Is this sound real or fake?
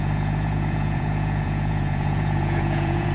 fake